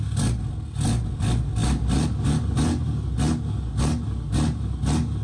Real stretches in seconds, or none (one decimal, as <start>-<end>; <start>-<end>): 0.0-5.2